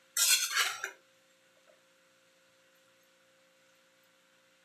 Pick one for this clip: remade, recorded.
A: recorded